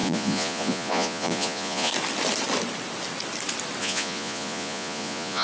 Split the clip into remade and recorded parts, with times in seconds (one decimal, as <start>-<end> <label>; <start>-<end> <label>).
0.0-1.9 remade; 1.9-3.8 recorded; 3.8-5.4 remade